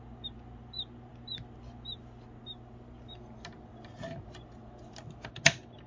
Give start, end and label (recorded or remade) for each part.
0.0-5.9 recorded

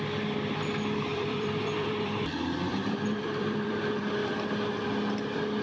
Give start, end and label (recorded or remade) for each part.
0.0-1.1 recorded; 1.1-4.0 remade; 4.0-5.6 recorded

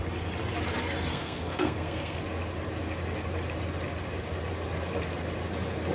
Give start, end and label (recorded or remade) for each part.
0.0-1.1 recorded; 1.1-2.2 remade; 2.2-5.9 recorded

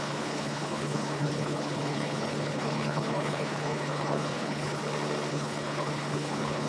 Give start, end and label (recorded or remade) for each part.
0.0-4.8 remade; 4.8-5.3 recorded; 5.3-6.7 remade

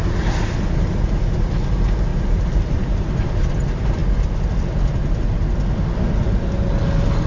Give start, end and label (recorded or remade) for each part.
0.0-2.1 recorded; 2.1-3.5 remade; 3.5-7.3 recorded

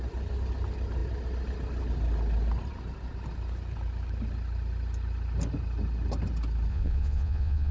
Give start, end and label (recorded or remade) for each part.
0.0-6.7 recorded; 6.7-7.7 remade